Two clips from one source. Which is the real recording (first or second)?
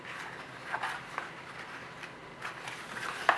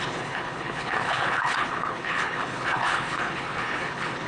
first